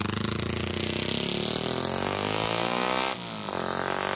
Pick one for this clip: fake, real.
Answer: real